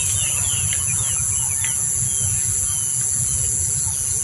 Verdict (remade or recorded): recorded